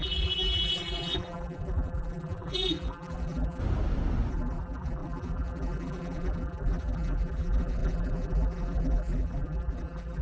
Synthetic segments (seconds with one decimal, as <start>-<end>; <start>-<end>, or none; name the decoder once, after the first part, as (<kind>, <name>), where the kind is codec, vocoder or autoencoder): 0.0-3.6 (vocoder, BigVGAN v2); 4.3-10.2